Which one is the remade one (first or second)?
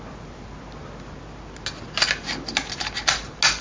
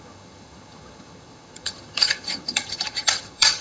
second